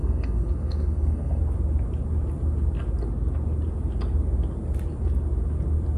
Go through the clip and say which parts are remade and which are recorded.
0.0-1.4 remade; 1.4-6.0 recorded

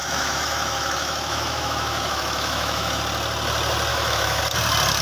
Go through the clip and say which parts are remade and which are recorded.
0.0-3.0 remade; 3.0-3.9 recorded; 3.9-4.4 remade; 4.4-5.0 recorded

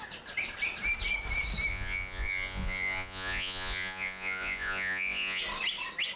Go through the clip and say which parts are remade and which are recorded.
0.0-1.7 recorded; 1.7-5.4 remade; 5.4-6.2 recorded

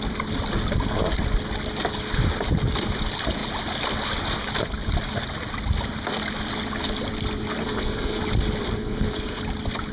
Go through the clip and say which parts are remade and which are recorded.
0.0-7.6 recorded; 7.6-8.2 remade; 8.2-8.6 recorded; 8.6-9.4 remade; 9.4-9.9 recorded

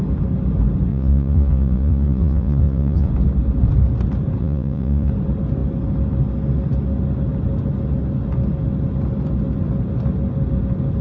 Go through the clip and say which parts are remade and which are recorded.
0.0-0.9 recorded; 0.9-3.1 remade; 3.1-4.4 recorded; 4.4-5.1 remade; 5.1-11.0 recorded

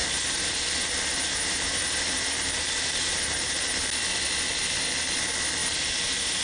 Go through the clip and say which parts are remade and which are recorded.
0.0-3.8 remade; 3.8-5.6 recorded; 5.6-6.4 remade

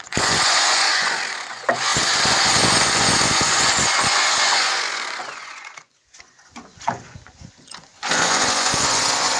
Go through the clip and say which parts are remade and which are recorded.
0.0-9.4 remade

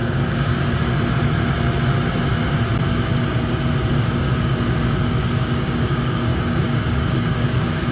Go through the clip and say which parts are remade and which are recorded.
0.0-3.9 recorded; 3.9-7.9 remade